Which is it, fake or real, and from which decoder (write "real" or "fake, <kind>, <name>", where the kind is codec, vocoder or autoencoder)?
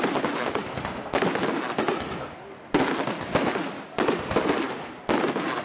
real